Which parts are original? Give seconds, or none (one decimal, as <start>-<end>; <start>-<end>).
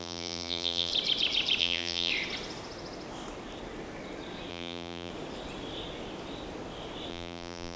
0.9-1.6; 2.1-4.5; 5.1-7.1